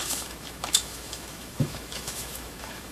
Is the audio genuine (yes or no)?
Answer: no